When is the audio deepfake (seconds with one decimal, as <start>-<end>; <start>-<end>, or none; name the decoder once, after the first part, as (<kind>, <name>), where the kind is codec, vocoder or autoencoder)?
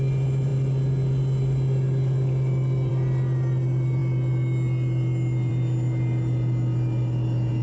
none